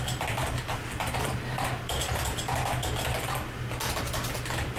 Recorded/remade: recorded